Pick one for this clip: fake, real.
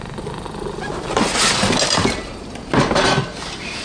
real